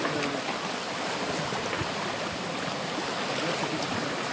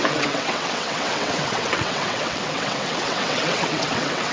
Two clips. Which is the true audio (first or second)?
first